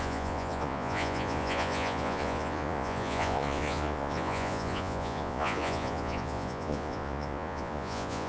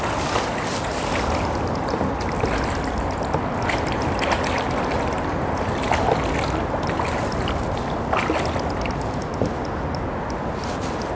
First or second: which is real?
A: second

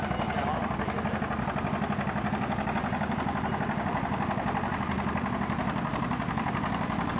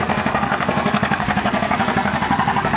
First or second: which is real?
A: first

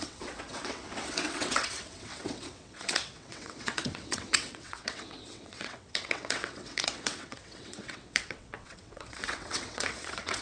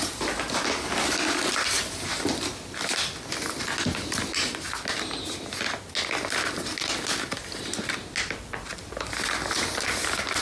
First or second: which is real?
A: second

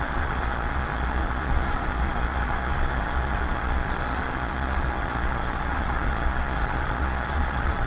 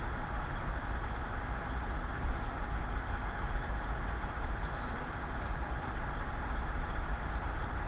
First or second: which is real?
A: second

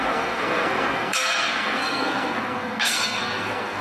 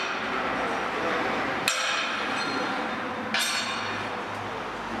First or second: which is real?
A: second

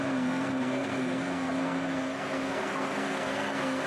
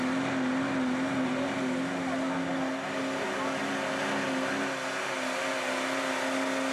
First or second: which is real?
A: second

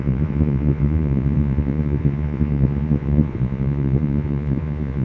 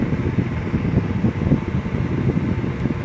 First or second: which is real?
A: second